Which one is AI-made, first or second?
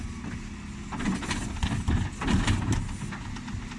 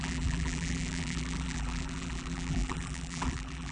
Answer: second